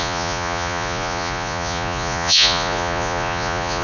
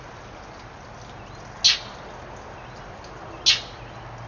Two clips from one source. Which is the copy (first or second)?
first